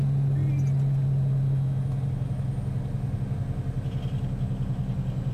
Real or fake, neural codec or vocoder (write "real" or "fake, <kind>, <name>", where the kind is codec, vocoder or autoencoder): real